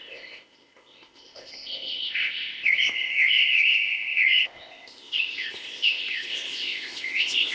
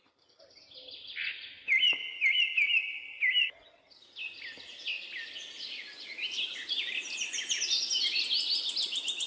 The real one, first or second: second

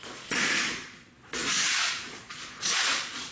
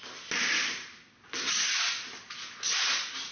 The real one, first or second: second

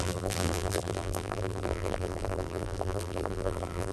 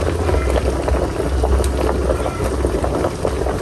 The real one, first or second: second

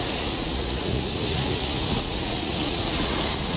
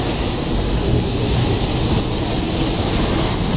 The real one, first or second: second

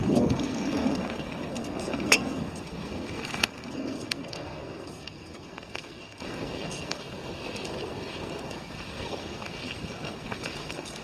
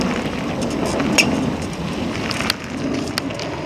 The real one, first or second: second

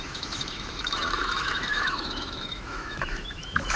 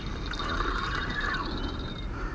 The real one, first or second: second